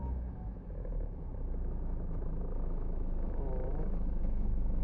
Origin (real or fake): fake